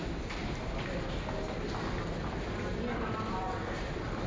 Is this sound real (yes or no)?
yes